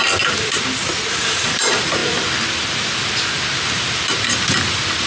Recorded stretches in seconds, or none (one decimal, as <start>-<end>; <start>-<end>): 0.0-5.1